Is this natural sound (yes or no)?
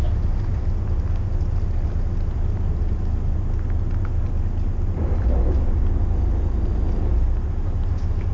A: yes